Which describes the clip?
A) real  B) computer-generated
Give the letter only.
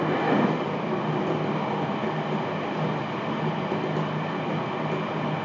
A